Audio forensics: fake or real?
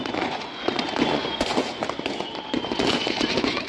fake